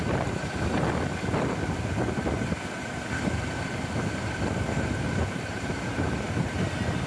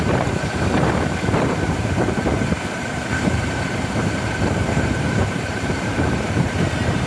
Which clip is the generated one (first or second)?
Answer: second